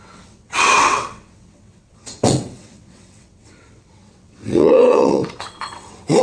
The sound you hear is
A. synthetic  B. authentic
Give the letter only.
A